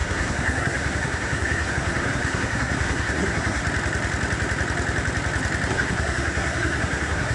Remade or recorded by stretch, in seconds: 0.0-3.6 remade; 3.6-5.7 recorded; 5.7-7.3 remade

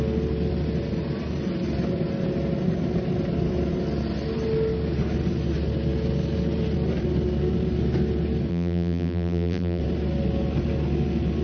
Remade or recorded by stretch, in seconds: 0.0-8.5 recorded; 8.5-9.8 remade; 9.8-11.4 recorded

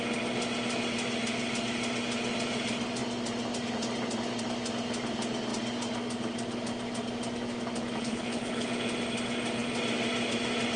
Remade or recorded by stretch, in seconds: 0.0-8.0 recorded; 8.0-8.7 remade; 8.7-10.8 recorded

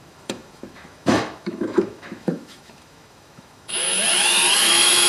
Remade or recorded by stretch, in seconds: 0.0-5.1 remade

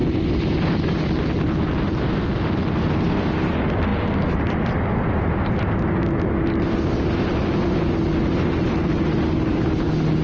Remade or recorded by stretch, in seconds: 0.0-10.2 recorded

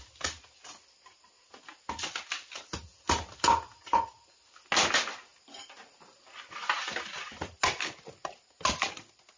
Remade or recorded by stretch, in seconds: 0.0-9.4 recorded

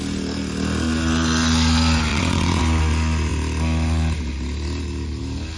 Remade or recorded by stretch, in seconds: 0.0-2.1 recorded; 2.1-2.6 remade; 2.6-5.6 recorded